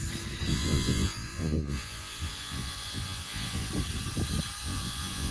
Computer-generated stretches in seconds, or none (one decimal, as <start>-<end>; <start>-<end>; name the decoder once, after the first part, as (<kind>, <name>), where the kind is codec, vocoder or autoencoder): 0.5-3.7 (vocoder, Vocos); 4.6-5.3